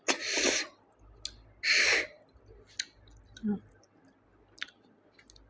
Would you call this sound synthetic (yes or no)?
no